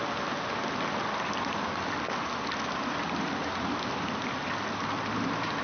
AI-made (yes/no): no